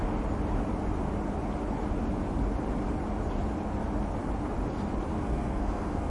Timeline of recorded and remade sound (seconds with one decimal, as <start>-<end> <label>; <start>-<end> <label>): 0.0-5.1 recorded; 5.1-6.1 remade